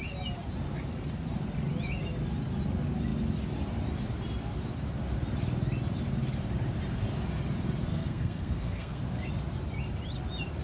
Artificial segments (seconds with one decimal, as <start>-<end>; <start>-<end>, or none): 7.9-9.0